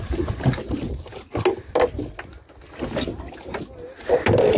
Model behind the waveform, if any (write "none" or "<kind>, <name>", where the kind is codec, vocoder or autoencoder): none